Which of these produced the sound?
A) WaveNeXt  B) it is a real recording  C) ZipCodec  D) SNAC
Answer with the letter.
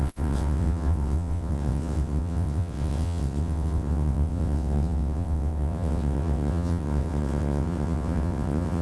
A